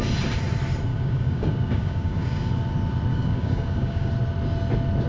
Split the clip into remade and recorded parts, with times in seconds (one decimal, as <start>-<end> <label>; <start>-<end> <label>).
0.0-0.9 recorded; 0.9-2.5 remade; 2.5-3.1 recorded; 3.1-4.1 remade; 4.1-5.1 recorded